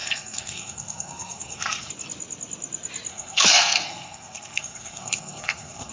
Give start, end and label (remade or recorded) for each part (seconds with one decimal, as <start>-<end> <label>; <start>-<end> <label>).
0.0-1.9 remade; 1.9-3.1 recorded; 3.1-5.9 remade